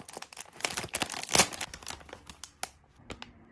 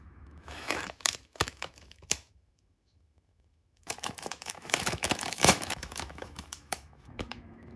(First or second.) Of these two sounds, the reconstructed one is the second